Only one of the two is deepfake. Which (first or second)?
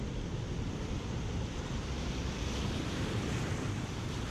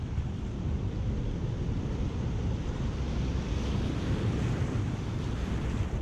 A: first